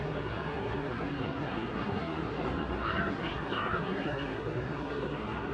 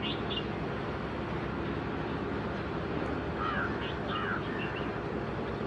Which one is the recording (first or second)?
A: second